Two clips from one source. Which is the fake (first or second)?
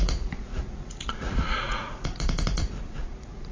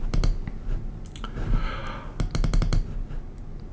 first